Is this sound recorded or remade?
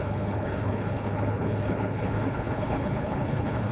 remade